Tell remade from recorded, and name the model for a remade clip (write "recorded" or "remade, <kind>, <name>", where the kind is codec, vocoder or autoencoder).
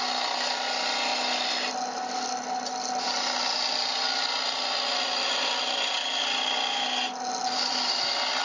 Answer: recorded